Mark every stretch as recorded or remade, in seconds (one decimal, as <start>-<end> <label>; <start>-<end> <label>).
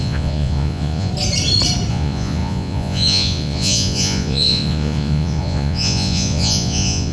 0.0-1.1 remade; 1.1-1.9 recorded; 1.9-7.1 remade